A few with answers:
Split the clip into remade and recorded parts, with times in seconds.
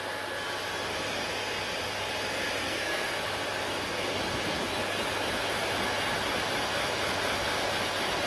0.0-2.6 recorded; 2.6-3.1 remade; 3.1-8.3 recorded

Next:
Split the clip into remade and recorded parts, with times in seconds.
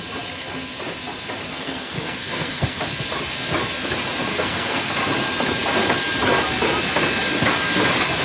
0.0-1.5 recorded; 1.5-2.8 remade; 2.8-4.3 recorded; 4.3-4.9 remade; 4.9-8.2 recorded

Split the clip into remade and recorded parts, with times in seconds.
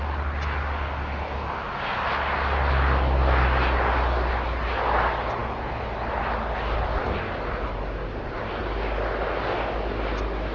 0.0-10.5 recorded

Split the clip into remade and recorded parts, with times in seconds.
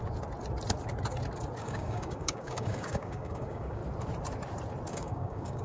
0.0-1.6 recorded; 1.6-3.8 remade; 3.8-4.9 recorded; 4.9-5.6 remade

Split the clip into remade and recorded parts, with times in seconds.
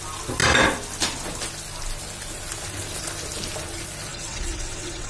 0.0-4.1 recorded; 4.1-5.1 remade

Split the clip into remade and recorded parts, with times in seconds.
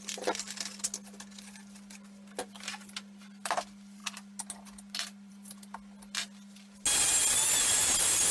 0.0-8.3 recorded